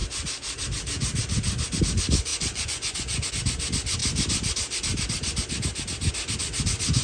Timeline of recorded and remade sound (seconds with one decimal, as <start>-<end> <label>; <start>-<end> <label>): 0.0-2.3 recorded; 2.3-3.3 remade; 3.3-7.0 recorded